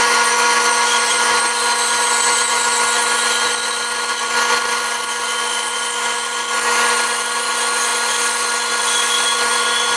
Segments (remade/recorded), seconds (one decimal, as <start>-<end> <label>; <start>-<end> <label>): 0.0-10.0 recorded